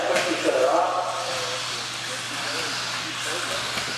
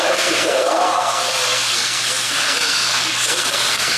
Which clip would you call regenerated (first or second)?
second